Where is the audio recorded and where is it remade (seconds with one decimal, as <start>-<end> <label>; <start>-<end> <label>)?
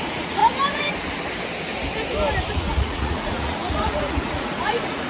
0.0-0.4 remade; 0.4-2.5 recorded; 2.5-5.1 remade